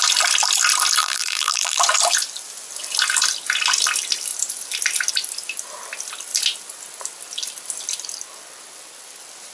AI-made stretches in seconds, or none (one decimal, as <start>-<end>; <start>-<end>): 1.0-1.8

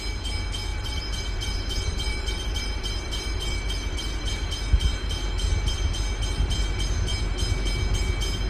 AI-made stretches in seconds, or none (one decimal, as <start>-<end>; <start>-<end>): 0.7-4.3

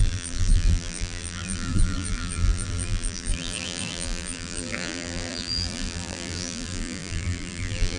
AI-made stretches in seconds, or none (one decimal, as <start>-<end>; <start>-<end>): 0.0-8.0